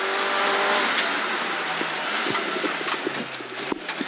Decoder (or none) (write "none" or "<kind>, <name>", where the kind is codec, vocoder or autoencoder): none